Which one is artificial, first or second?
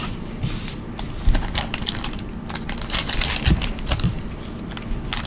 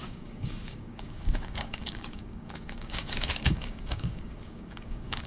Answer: second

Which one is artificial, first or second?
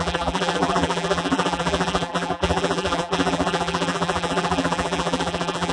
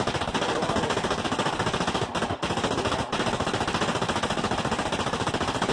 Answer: first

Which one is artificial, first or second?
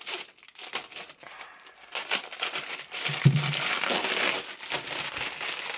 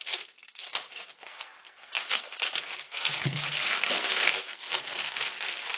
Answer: second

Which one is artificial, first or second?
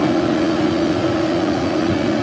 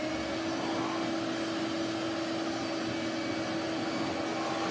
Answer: first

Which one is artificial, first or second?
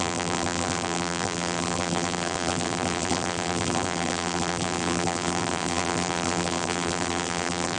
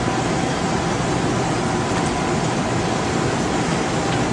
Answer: first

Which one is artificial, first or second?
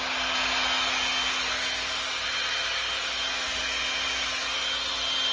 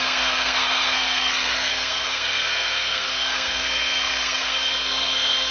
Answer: second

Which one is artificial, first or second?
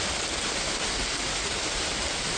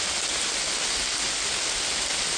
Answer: first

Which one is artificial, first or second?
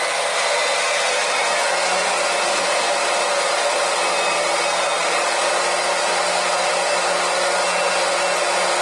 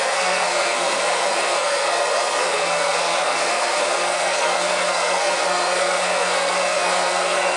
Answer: second